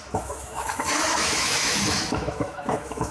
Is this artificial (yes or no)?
yes